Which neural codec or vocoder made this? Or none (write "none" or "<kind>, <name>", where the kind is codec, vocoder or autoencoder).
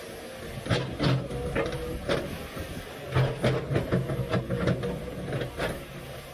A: none